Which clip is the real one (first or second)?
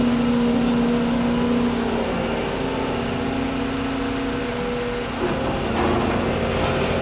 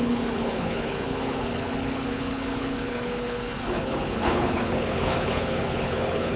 first